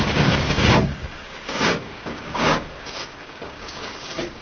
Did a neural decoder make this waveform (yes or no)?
yes